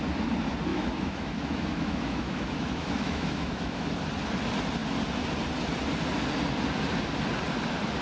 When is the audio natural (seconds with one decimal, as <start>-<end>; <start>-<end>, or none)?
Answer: 0.0-0.7; 3.9-8.0